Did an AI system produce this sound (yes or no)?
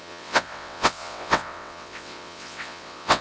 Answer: yes